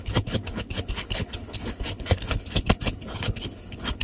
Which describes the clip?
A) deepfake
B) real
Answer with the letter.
A